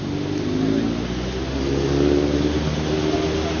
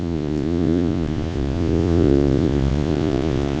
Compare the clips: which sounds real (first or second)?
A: first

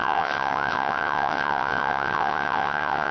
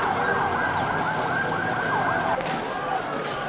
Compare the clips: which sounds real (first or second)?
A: second